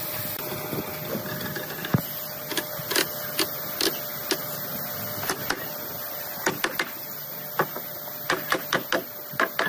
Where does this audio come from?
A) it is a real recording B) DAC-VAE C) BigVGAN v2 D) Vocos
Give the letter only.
A